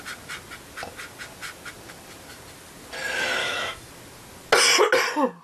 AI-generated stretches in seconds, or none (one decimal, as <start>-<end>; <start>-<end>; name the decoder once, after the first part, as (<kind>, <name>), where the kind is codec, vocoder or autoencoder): 3.4-3.9 (autoencoder, DAC-VAE)